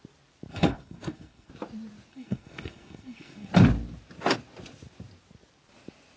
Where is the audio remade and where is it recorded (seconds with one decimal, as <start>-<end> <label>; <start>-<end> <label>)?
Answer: 0.0-0.5 recorded; 0.5-1.5 remade; 1.5-2.1 recorded; 2.1-3.5 remade; 3.5-6.2 recorded

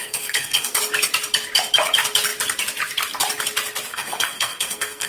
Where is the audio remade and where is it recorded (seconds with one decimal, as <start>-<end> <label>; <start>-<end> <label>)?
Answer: 0.0-0.8 remade; 0.8-3.9 recorded; 3.9-5.1 remade

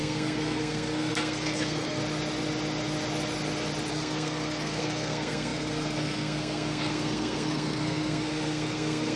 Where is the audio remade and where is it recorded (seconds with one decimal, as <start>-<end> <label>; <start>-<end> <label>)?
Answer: 0.0-2.0 remade; 2.0-3.9 recorded; 3.9-9.2 remade

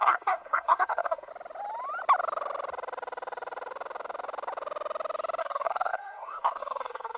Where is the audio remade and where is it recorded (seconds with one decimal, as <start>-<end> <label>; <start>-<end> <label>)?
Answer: 0.0-1.3 remade; 1.3-5.4 recorded; 5.4-7.2 remade

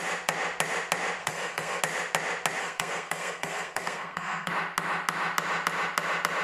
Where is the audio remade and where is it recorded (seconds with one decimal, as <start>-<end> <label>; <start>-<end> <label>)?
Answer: 0.0-1.2 recorded; 1.2-1.8 remade; 1.8-2.6 recorded; 2.6-4.5 remade; 4.5-6.4 recorded

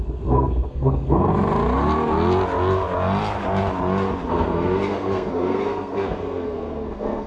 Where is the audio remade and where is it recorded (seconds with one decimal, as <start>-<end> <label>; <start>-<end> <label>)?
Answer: 0.0-1.3 remade; 1.3-4.3 recorded; 4.3-7.3 remade